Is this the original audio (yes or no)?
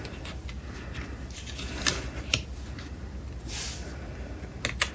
yes